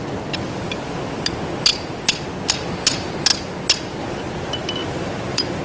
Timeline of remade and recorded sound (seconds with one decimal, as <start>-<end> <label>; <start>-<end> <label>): 0.0-4.8 recorded; 4.8-5.6 remade